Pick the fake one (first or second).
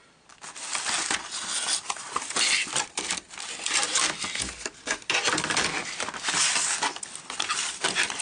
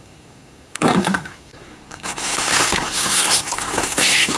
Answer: second